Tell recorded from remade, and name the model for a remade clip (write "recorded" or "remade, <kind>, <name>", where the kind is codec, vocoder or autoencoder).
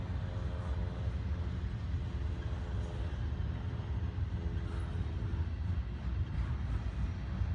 recorded